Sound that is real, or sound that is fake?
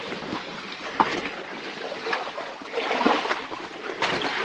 real